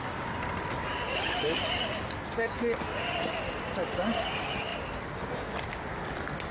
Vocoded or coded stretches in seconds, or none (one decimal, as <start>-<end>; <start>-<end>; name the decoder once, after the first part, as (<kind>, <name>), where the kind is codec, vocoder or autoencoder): none